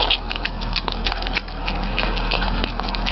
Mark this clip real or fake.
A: fake